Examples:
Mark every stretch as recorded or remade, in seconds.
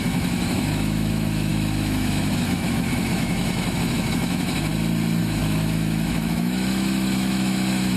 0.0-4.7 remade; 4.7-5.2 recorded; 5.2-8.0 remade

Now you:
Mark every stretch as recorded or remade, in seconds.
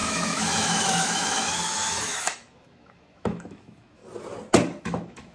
0.0-4.0 remade; 4.0-4.8 recorded; 4.8-5.3 remade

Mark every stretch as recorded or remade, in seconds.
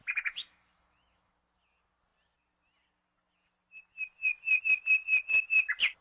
0.0-1.3 remade; 1.3-6.0 recorded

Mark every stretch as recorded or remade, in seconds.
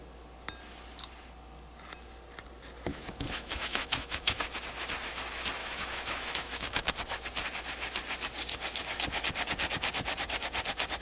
0.0-2.9 recorded; 2.9-4.4 remade; 4.4-5.6 recorded; 5.6-6.9 remade; 6.9-11.0 recorded